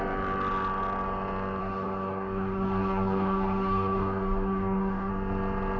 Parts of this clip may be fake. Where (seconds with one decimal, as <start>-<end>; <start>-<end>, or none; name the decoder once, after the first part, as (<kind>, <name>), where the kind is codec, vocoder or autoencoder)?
1.6-5.1 (codec, DAC)